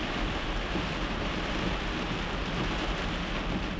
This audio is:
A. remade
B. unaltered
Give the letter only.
B